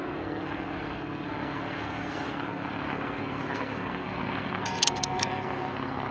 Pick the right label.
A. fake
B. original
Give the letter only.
A